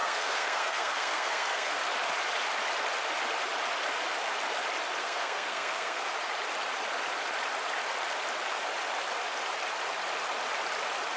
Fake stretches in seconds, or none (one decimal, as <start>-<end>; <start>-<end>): 0.0-1.8; 5.0-6.1